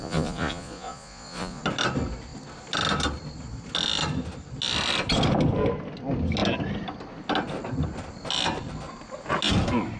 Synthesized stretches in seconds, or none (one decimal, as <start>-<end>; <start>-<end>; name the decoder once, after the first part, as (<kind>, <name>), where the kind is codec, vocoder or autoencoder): 0.0-1.6 (vocoder, Vocos)